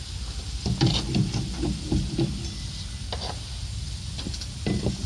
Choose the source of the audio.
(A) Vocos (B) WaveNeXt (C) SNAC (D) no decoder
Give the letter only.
D